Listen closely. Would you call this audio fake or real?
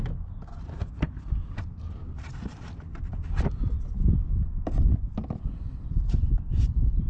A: real